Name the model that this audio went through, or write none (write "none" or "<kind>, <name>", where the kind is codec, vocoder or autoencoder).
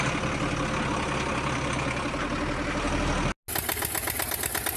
none